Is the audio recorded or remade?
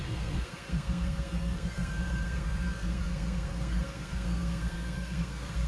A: remade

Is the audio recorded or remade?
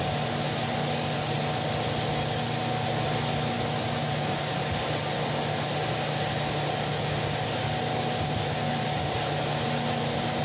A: recorded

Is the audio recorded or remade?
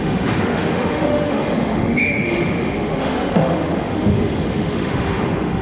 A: remade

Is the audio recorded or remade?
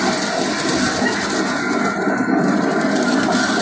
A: remade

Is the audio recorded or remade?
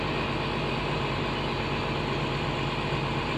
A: recorded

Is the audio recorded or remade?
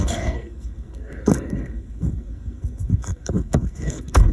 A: remade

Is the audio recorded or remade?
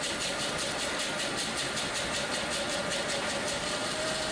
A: remade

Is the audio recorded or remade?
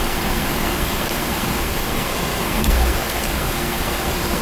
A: remade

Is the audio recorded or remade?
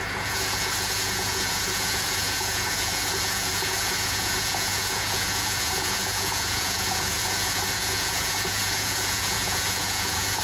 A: remade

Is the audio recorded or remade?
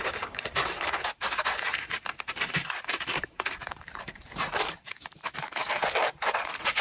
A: remade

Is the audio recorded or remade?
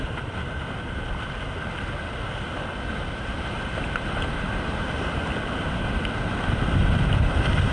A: recorded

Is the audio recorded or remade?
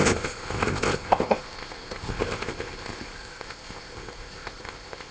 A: remade